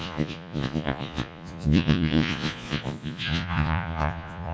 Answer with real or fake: fake